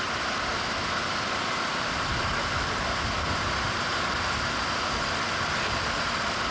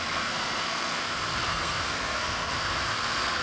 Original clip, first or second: first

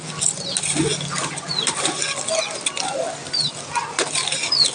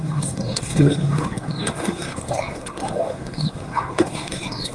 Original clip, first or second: first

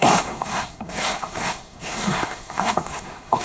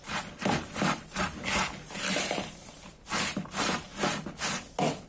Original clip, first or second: second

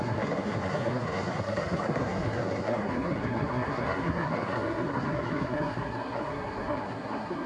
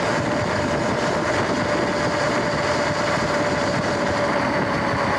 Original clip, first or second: second